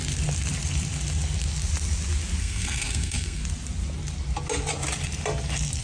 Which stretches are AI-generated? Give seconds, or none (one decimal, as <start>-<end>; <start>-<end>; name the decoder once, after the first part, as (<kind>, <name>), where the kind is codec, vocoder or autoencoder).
2.4-3.4 (codec, SNAC)